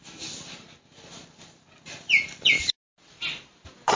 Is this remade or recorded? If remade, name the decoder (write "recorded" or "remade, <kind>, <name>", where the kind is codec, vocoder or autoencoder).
recorded